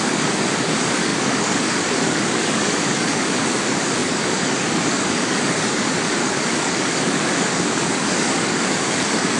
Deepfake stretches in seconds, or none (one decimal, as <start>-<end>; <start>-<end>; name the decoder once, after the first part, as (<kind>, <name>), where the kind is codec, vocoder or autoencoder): 0.0-9.4 (codec, DAC)